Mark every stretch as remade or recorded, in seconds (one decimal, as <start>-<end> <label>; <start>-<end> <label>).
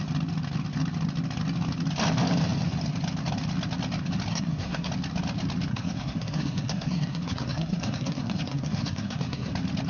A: 0.0-4.3 recorded; 4.3-4.9 remade; 4.9-5.7 recorded; 5.7-9.5 remade; 9.5-9.9 recorded